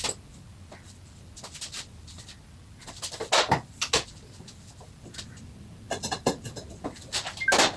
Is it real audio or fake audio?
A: real